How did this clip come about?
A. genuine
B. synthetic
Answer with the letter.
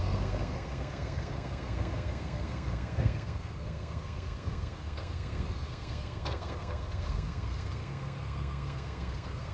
B